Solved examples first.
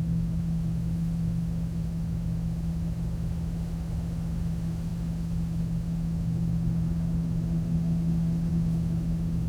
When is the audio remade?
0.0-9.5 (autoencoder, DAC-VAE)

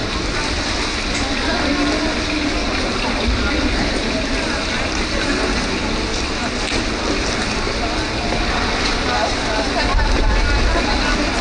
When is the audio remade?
none

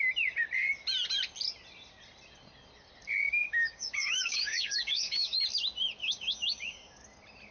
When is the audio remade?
3.2-5.4 (codec, DAC); 6.0-6.8

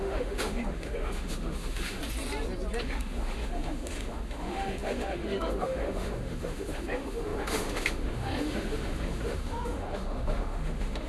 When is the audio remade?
0.0-2.0 (autoencoder, DAC-VAE); 2.8-11.1